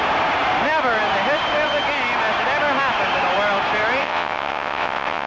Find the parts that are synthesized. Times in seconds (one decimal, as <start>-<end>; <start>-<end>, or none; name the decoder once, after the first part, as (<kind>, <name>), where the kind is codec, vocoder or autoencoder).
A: 4.0-5.3 (vocoder, WaveNeXt)